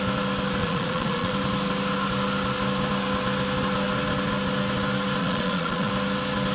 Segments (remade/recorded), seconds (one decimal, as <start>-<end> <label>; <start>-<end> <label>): 0.0-0.6 recorded; 0.6-1.3 remade; 1.3-5.2 recorded; 5.2-5.9 remade; 5.9-6.5 recorded